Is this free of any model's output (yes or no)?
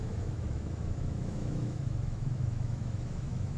no